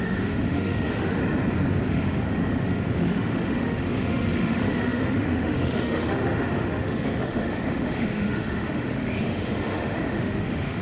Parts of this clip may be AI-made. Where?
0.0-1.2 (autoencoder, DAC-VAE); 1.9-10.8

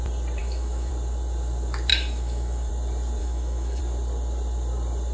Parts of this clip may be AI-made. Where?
0.4-0.9 (autoencoder, DAC-VAE); 1.9-2.7; 3.2-3.8

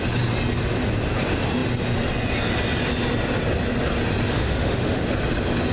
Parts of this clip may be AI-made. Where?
4.3-5.0 (autoencoder, DAC-VAE)

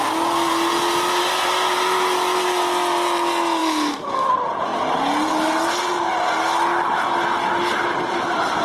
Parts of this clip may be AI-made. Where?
3.6-4.3 (autoencoder, DAC-VAE)

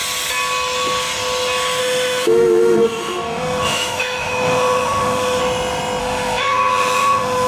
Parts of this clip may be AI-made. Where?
1.8-5.4 (autoencoder, DAC-VAE); 6.0-7.5

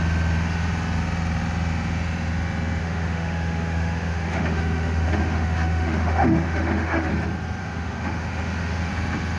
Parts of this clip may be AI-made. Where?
2.8-7.1 (autoencoder, DAC-VAE); 7.6-8.9

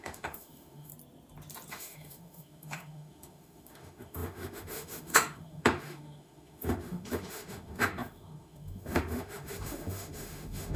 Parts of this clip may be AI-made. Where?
0.0-0.9 (autoencoder, DAC-VAE); 1.7-10.8

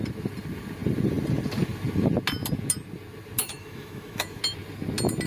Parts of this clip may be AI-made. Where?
3.4-4.4 (autoencoder, DAC-VAE)